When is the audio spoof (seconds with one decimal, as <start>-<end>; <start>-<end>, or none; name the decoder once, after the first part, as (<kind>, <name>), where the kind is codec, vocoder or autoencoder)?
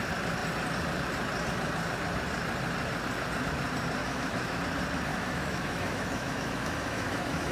4.0-4.6 (autoencoder, DAC-VAE); 5.1-7.5